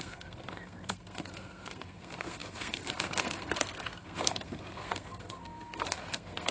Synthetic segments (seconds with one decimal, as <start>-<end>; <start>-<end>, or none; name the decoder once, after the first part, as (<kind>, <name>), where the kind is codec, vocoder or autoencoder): 0.0-6.5 (codec, SNAC)